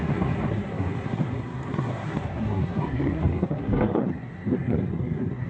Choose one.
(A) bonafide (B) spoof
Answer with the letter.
B